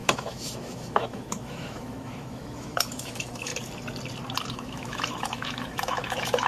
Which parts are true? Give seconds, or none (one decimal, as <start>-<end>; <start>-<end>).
3.5-4.5